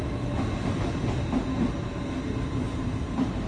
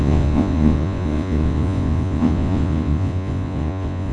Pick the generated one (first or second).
second